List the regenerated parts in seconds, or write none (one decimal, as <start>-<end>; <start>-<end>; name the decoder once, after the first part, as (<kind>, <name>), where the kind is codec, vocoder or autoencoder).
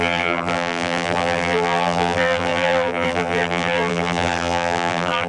0.0-5.3 (vocoder, BigVGAN v2)